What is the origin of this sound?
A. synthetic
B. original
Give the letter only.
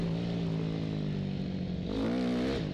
B